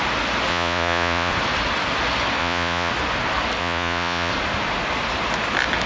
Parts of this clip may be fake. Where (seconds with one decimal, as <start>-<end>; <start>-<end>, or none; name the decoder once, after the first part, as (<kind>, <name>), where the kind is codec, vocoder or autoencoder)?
0.5-1.3 (vocoder, Vocos); 2.4-2.9; 3.6-4.3